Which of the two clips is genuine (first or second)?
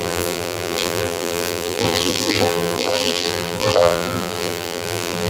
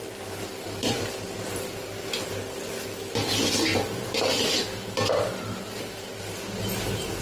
second